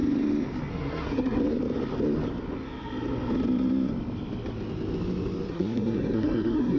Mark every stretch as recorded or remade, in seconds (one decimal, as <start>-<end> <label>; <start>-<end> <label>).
0.0-0.7 recorded; 0.7-1.4 remade; 1.4-5.5 recorded; 5.5-6.8 remade